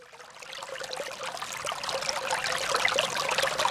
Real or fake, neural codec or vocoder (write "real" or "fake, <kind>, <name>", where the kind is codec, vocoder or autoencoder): real